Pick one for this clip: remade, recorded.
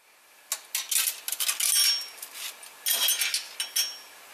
recorded